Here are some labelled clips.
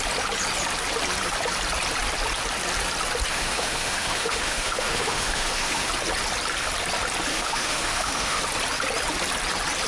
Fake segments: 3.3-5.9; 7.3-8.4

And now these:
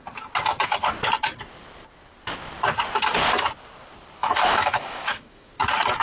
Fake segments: 4.2-5.6

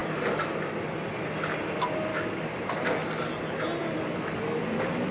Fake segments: 2.1-2.6; 3.8-4.6